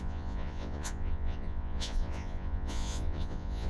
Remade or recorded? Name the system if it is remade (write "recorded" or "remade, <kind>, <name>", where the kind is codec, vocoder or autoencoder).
remade, vocoder, Vocos